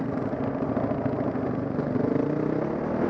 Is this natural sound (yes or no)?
yes